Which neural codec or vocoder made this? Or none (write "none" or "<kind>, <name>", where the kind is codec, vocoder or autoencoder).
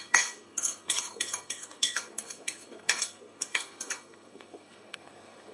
codec, SNAC